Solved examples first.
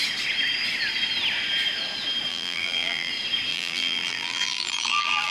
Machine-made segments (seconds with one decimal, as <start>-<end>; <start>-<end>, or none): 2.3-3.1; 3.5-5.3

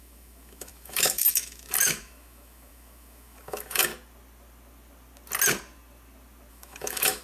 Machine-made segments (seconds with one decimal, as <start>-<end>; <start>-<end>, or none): 0.0-3.9; 6.5-7.2

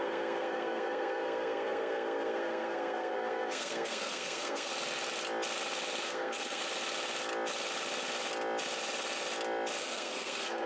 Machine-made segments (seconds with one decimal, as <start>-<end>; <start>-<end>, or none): 0.0-4.7; 6.0-6.6; 9.8-10.7

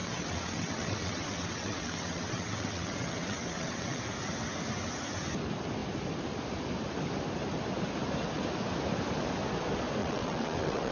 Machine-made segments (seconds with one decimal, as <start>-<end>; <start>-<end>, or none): 0.0-4.0; 10.0-10.9

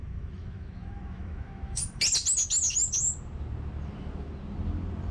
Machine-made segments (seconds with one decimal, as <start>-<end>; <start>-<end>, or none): 0.0-1.8